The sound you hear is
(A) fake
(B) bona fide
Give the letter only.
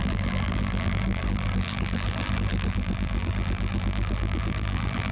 A